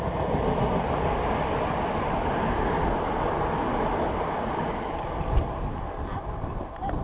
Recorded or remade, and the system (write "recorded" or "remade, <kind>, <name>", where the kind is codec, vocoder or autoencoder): recorded